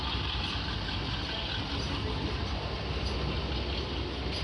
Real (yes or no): yes